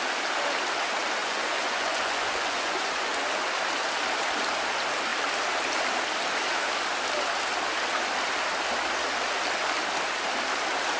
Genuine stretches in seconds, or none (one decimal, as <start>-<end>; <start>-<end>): 0.0-1.2; 3.1-11.0